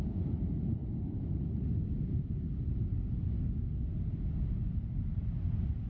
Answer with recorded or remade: recorded